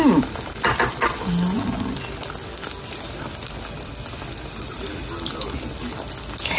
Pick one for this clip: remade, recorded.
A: recorded